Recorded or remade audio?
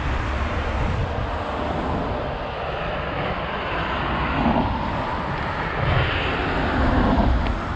recorded